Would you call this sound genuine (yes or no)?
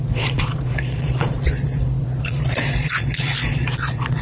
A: no